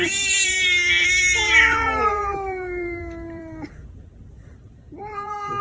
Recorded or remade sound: remade